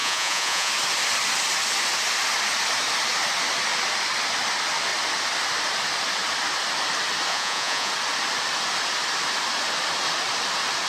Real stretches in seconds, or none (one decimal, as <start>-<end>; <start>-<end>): 0.7-7.3; 7.9-10.9